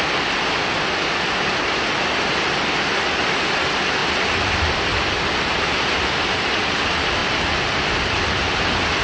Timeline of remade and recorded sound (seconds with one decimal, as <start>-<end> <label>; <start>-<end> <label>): 0.0-4.0 recorded; 4.0-5.5 remade; 5.5-9.0 recorded